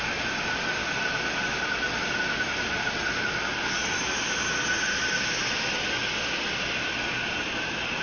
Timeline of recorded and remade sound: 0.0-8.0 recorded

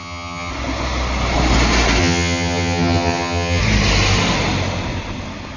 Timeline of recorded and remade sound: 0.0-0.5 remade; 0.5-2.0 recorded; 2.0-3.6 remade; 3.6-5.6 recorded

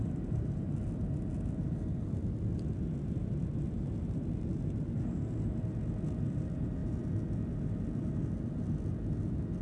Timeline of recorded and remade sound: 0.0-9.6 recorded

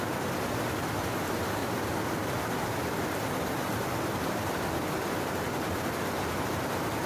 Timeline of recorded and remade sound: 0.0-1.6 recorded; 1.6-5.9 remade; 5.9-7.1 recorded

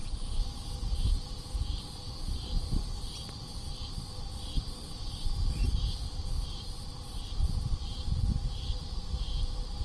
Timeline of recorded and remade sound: 0.0-9.8 remade